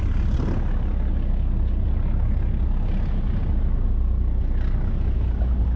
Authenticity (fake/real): real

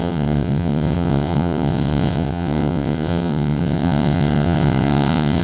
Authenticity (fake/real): fake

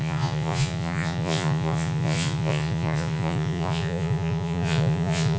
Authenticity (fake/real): fake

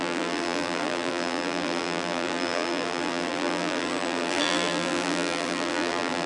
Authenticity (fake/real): fake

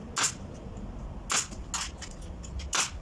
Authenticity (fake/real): real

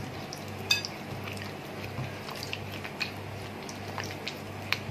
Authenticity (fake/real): real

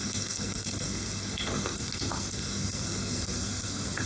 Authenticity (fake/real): fake